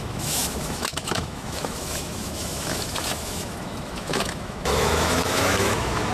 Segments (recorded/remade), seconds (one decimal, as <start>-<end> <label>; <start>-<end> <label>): 0.0-6.1 remade